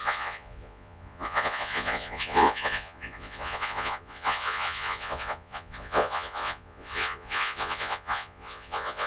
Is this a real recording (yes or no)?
no